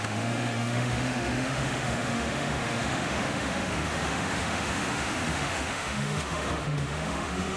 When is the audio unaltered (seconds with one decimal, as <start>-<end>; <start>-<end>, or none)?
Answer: none